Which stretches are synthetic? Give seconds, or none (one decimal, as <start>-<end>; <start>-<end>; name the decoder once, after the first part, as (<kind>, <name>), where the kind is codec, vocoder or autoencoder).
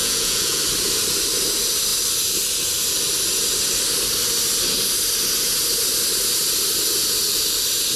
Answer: 0.0-0.6 (vocoder, Vocos)